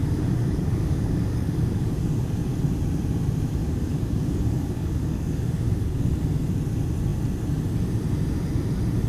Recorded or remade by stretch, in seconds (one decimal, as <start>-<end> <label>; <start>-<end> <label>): 0.0-2.6 remade; 2.6-3.6 recorded; 3.6-6.0 remade; 6.0-9.1 recorded